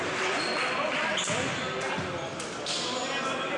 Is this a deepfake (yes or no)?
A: no